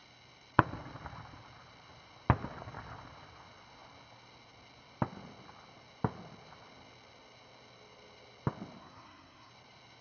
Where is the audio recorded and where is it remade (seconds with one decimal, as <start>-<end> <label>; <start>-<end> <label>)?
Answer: 0.0-8.8 recorded; 8.8-9.5 remade; 9.5-10.0 recorded